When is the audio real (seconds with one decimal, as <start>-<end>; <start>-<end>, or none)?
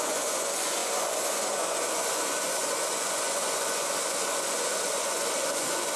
none